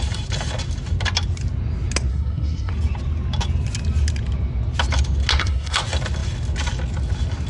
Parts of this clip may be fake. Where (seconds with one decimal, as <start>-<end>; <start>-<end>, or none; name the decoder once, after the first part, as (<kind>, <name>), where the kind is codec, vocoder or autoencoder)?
2.1-2.7 (codec, SNAC); 5.3-5.8